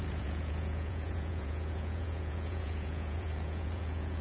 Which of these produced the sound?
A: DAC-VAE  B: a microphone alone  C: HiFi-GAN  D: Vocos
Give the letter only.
D